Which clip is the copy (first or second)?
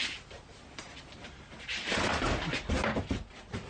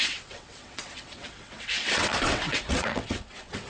second